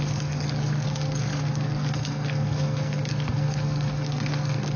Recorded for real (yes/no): no